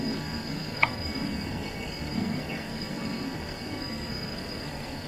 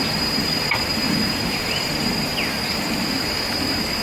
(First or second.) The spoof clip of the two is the first